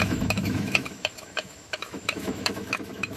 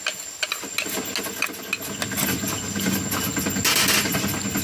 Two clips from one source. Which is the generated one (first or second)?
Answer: first